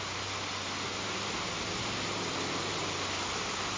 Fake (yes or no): no